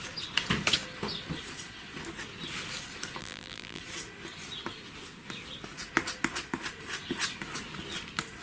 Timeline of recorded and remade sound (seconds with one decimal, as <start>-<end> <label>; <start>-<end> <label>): 0.0-3.2 recorded; 3.2-3.8 remade; 3.8-8.4 recorded